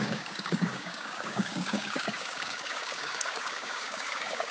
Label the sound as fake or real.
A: fake